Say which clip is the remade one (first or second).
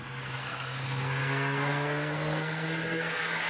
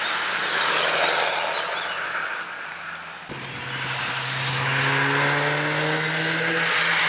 first